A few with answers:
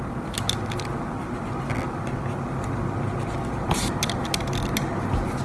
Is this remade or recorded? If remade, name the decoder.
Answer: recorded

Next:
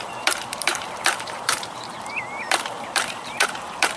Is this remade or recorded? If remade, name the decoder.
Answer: remade, vocoder, BigVGAN v2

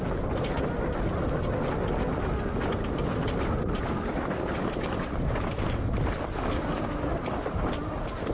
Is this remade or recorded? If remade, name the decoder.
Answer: recorded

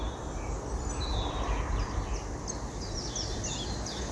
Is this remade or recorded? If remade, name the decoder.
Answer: recorded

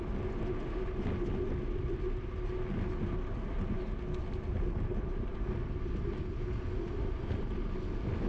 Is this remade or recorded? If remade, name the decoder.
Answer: recorded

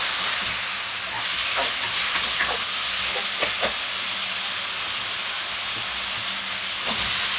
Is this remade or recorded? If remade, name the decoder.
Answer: recorded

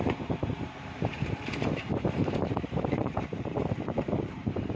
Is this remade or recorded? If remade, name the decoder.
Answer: remade, vocoder, BigVGAN v2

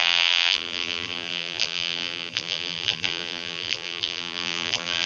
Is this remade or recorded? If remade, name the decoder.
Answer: remade, vocoder, BigVGAN v2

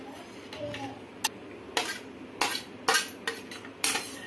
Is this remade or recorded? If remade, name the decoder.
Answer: recorded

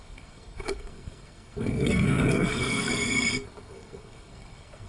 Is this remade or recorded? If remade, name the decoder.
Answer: remade, codec, SNAC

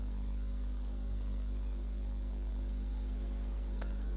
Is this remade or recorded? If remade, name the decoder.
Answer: remade, codec, SNAC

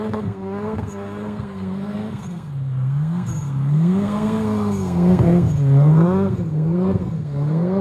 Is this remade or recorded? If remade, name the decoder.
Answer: remade, codec, SNAC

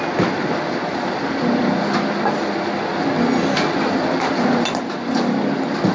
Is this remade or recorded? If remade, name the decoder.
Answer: recorded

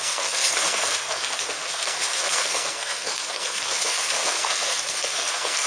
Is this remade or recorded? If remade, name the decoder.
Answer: remade, codec, SNAC